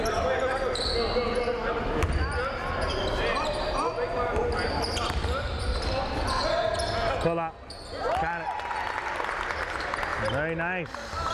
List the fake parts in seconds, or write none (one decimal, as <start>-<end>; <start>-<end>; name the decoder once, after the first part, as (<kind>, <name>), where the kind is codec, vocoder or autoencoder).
3.3-6.4 (vocoder, BigVGAN v2)